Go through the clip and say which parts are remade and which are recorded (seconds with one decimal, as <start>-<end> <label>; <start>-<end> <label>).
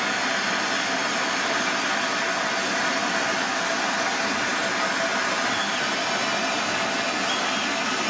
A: 0.0-8.1 recorded